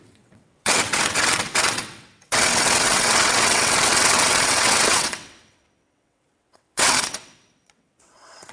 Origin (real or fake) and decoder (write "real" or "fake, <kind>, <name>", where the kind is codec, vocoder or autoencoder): fake, vocoder, WaveNeXt